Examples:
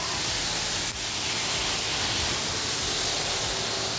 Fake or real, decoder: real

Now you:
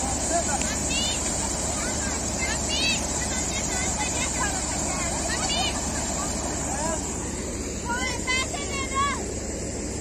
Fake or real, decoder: fake, vocoder, BigVGAN v2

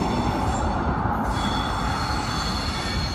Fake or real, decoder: real